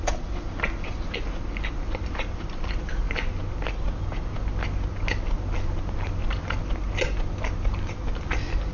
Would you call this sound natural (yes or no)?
yes